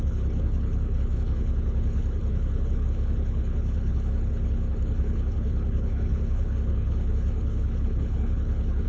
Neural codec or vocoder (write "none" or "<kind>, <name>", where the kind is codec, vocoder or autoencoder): codec, HILCodec